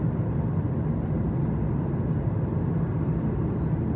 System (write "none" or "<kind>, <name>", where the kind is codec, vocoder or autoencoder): none